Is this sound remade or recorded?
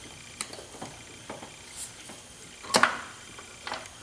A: recorded